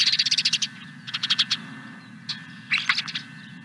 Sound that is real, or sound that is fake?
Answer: real